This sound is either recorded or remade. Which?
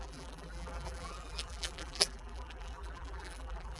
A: remade